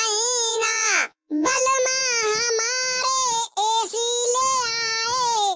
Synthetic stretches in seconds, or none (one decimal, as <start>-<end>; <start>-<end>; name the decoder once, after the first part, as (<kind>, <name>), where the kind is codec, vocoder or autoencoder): 0.5-1.6 (vocoder, Vocos)